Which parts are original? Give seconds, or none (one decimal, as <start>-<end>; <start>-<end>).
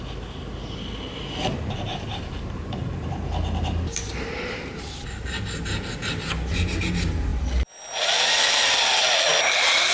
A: 0.0-9.9